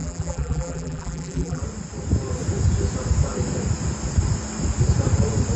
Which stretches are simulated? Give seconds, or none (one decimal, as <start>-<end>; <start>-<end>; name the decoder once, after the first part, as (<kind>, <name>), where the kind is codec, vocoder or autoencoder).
0.0-1.6 (vocoder, BigVGAN v2)